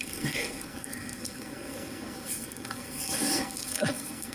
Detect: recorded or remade remade